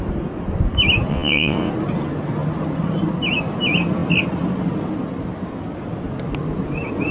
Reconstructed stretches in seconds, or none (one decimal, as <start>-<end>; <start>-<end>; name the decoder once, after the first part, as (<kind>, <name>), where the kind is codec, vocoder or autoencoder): 1.1-1.7 (vocoder, WaveNeXt)